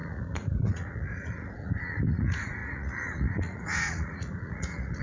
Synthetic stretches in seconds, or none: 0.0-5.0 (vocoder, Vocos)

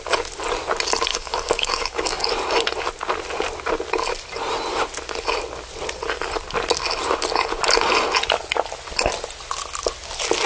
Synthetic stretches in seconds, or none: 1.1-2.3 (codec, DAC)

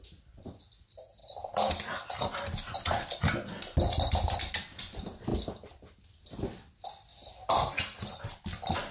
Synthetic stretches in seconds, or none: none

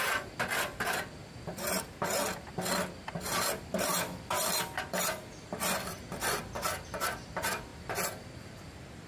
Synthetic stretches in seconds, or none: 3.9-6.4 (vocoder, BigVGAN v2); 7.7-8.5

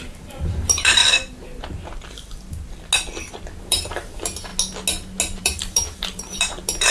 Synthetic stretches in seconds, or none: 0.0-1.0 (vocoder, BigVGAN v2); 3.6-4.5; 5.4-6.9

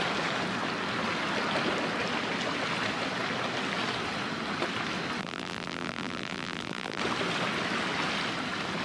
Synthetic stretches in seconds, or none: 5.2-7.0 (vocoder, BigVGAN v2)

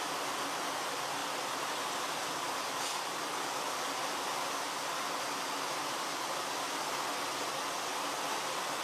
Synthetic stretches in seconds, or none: 1.2-1.8 (vocoder, BigVGAN v2)

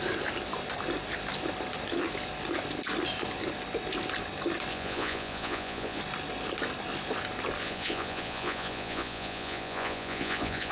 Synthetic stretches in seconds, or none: 4.7-6.0 (vocoder, Vocos); 7.6-10.7